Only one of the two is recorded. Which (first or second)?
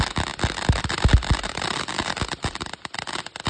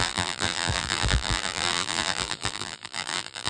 first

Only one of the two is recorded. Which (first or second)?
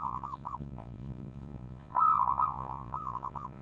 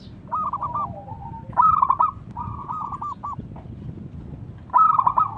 second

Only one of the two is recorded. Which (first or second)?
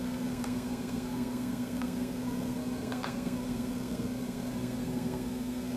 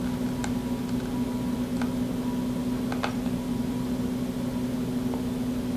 second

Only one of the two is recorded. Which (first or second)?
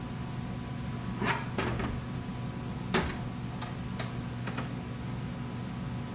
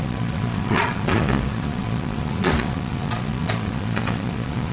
first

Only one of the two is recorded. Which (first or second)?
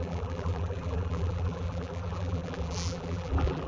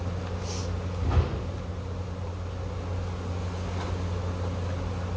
second